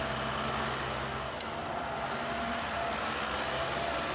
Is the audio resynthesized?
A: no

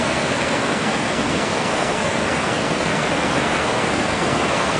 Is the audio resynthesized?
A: yes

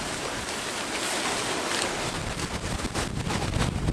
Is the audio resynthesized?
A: no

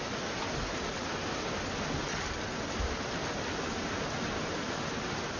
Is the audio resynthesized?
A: no